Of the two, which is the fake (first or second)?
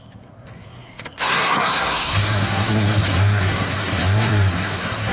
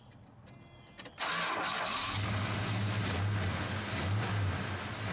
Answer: first